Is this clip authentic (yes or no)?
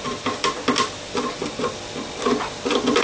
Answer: yes